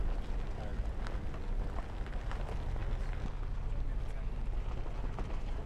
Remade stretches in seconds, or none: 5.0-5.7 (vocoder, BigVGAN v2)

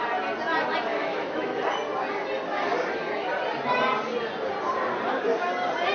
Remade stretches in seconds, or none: 0.9-1.5 (autoencoder, DAC-VAE)

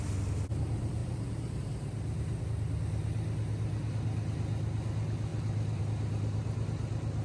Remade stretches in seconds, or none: 1.0-2.4 (vocoder, BigVGAN v2)

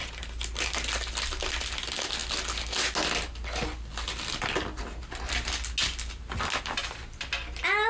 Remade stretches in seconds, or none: none